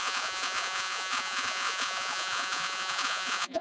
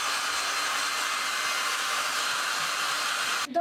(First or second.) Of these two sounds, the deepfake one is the first